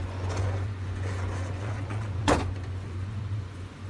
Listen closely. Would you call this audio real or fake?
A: fake